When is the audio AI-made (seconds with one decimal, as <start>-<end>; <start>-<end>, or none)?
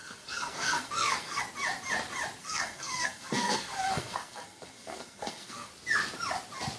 0.0-1.4; 2.4-5.7